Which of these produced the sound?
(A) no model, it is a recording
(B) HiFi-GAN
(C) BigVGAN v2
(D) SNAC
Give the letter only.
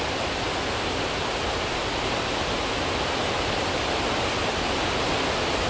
A